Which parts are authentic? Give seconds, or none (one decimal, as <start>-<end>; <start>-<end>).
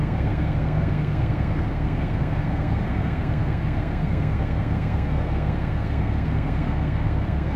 none